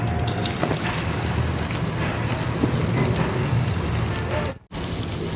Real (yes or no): yes